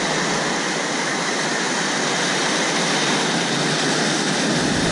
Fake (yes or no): no